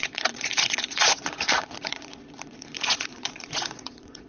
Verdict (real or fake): fake